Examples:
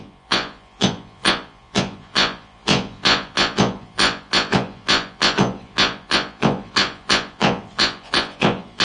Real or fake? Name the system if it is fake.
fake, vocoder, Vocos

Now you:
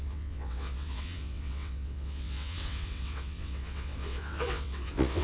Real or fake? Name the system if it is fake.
fake, vocoder, WaveNeXt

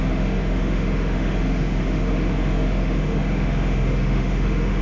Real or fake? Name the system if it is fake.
fake, autoencoder, DAC-VAE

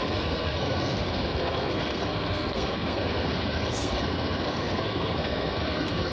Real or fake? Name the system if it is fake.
fake, codec, SNAC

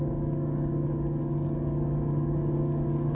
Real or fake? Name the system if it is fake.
fake, codec, DAC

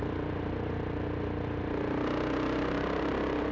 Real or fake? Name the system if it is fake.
real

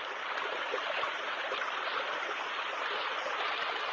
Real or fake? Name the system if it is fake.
real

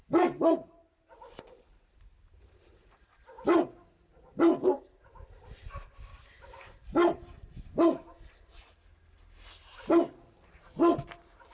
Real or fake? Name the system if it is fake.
real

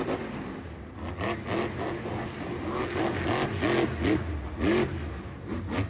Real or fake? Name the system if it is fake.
real